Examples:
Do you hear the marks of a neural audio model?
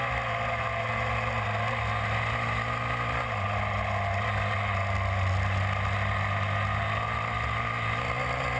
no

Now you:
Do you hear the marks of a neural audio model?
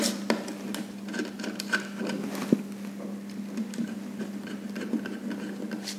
no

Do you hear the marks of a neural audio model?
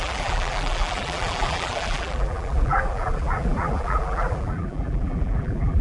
yes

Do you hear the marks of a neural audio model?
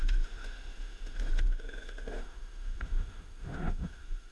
yes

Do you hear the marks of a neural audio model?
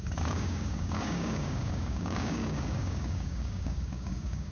yes